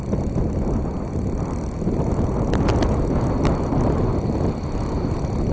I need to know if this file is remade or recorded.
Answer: recorded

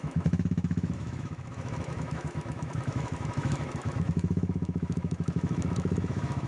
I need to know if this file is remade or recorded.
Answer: remade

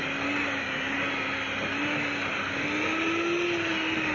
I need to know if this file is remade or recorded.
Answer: recorded